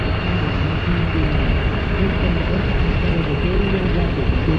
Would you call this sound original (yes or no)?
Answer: yes